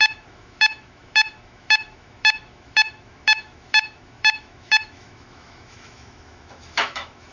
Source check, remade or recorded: remade